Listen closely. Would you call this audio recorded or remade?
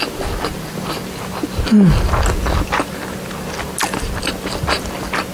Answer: recorded